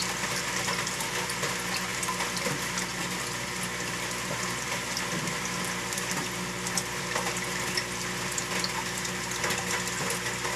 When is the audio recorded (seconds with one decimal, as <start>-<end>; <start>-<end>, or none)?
0.0-10.6